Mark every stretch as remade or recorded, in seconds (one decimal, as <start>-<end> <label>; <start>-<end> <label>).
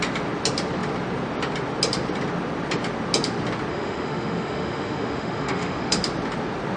0.0-3.7 recorded; 3.7-6.0 remade; 6.0-6.8 recorded